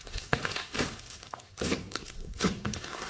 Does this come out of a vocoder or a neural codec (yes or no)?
yes